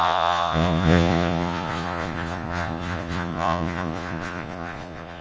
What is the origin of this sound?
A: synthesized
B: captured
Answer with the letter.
A